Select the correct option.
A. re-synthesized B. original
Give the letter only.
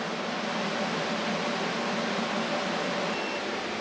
B